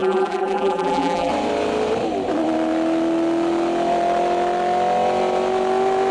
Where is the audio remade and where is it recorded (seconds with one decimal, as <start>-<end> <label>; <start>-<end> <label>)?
0.0-1.3 remade; 1.3-6.1 recorded